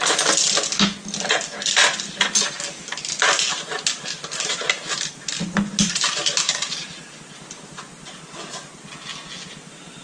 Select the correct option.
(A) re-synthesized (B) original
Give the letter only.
B